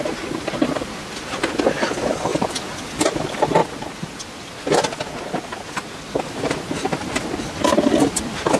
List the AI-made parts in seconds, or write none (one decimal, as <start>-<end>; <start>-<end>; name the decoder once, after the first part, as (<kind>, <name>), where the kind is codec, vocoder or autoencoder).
none